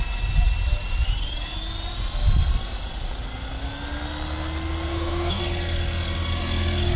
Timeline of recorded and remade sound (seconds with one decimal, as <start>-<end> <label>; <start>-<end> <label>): 0.0-4.9 recorded; 4.9-5.4 remade; 5.4-7.0 recorded